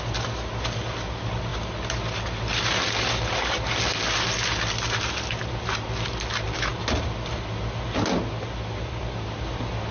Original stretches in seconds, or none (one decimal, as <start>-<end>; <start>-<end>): 0.0-9.9